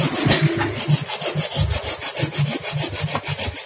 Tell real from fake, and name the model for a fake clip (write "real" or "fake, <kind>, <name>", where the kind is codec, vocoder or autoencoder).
real